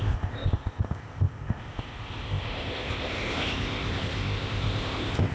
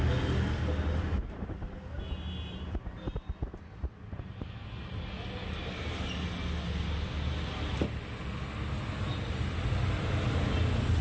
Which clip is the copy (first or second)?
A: first